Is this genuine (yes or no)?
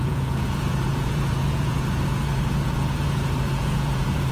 no